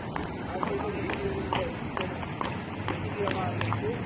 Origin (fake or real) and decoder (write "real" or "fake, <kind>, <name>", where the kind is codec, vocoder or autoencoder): real